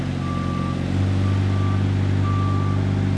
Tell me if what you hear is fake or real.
real